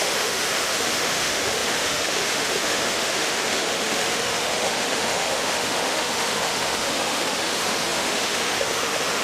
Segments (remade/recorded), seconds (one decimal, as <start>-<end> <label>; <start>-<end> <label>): 0.0-9.2 remade